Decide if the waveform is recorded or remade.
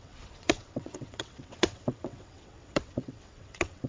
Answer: remade